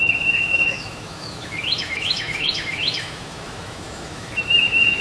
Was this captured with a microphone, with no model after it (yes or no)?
no